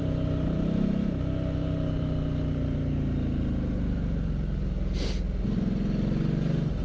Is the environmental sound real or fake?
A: real